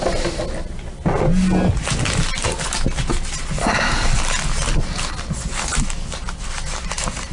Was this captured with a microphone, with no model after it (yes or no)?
yes